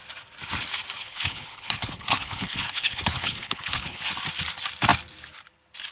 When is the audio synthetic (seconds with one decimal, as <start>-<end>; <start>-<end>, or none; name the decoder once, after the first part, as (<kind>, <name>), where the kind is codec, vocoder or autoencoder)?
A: 1.0-4.0 (codec, HILCodec)